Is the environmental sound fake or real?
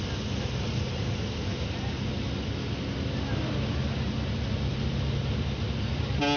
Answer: real